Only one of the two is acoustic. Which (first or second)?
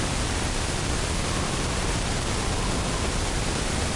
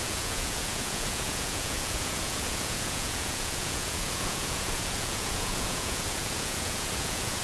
first